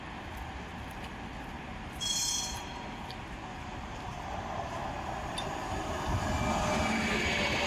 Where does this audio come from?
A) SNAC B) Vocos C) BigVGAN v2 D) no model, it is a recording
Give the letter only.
D